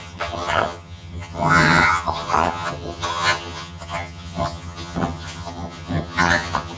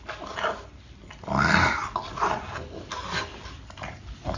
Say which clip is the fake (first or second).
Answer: first